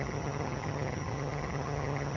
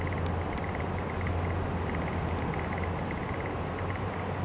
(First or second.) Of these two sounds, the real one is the second